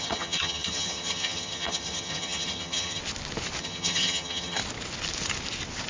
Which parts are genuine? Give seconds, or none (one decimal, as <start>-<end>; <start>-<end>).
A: 3.0-3.6; 4.6-5.9